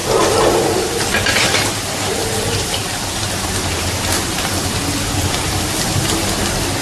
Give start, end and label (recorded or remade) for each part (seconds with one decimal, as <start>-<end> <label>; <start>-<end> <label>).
0.0-6.8 recorded